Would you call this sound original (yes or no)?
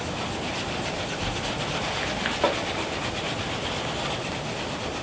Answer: yes